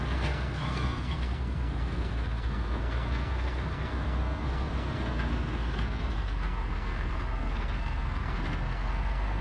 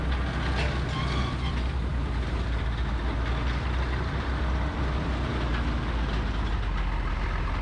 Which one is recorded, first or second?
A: second